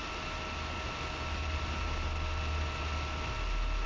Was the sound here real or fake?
real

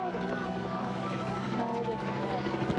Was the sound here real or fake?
fake